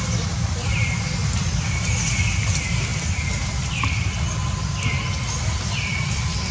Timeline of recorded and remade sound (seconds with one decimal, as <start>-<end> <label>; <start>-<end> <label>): 0.0-6.5 recorded